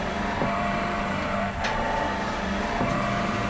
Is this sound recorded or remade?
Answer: remade